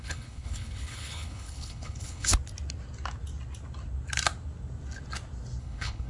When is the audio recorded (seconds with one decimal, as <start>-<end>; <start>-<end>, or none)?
2.3-5.6